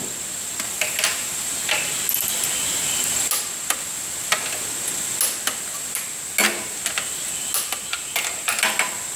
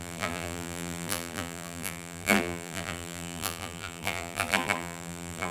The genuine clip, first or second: first